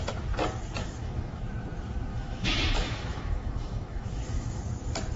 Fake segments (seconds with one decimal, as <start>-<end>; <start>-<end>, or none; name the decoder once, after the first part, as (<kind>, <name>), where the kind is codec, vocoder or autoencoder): 0.8-1.4 (autoencoder, DAC-VAE); 2.1-4.6

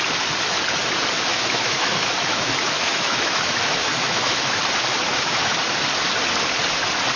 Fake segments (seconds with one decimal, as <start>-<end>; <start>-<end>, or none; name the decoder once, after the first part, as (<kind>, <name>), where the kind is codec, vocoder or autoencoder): 1.3-4.6 (autoencoder, DAC-VAE); 5.1-5.6

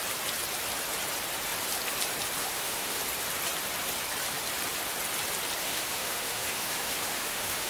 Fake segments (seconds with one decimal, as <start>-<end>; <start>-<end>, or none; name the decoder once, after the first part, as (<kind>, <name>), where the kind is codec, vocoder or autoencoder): 2.4-3.0 (autoencoder, DAC-VAE); 5.6-7.7

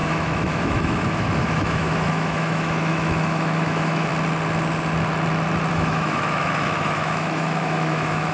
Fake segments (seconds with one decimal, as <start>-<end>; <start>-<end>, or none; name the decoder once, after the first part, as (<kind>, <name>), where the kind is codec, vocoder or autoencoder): 0.0-4.1 (autoencoder, DAC-VAE); 5.7-8.3